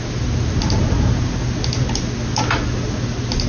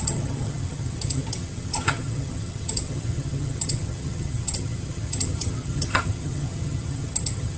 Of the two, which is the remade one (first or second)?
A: second